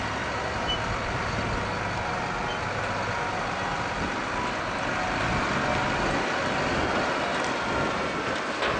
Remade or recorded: recorded